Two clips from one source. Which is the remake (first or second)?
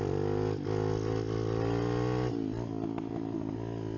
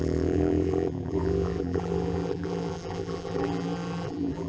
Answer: second